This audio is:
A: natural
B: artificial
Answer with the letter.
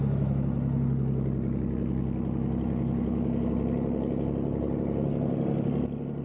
A